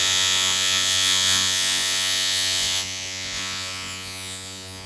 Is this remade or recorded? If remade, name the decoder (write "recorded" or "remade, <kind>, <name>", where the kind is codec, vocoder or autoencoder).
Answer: remade, vocoder, Vocos